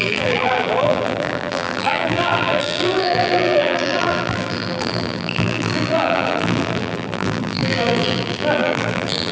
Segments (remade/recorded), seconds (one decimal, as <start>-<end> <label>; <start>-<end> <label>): 0.0-9.3 remade

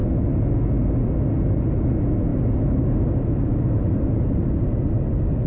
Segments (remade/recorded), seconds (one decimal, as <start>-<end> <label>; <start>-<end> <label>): 0.0-5.5 recorded

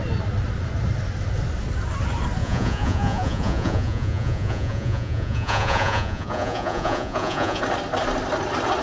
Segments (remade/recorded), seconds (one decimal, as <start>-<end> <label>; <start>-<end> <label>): 0.0-2.4 recorded; 2.4-7.6 remade; 7.6-8.8 recorded